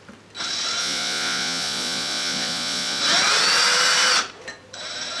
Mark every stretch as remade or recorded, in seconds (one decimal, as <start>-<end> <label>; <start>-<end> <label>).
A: 0.0-0.8 recorded; 0.8-3.0 remade; 3.0-5.2 recorded